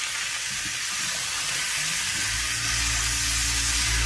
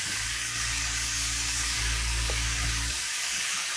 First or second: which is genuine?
first